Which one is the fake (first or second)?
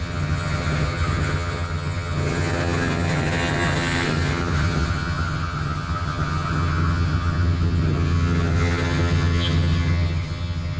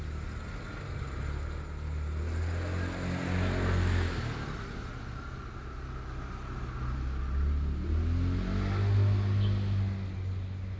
first